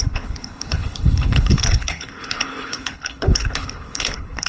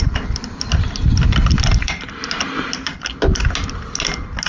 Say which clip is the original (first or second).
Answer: second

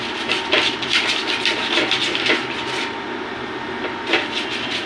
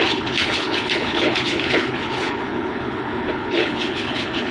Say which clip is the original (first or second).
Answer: first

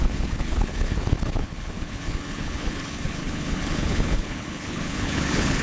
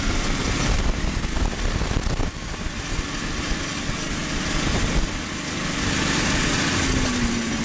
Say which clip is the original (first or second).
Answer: second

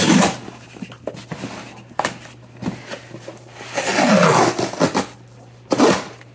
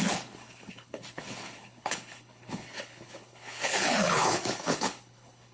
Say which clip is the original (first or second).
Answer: first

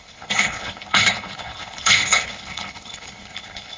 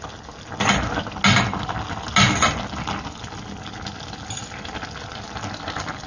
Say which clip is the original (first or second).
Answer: second